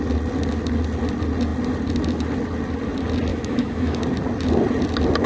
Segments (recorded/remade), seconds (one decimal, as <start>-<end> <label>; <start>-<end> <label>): 0.0-3.3 recorded; 3.3-4.0 remade; 4.0-5.3 recorded